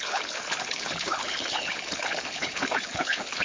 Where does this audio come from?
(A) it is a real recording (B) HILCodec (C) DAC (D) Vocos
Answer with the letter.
B